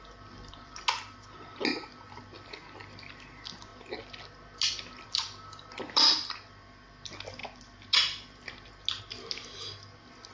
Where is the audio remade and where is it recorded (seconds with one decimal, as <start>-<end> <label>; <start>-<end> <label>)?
0.0-10.3 recorded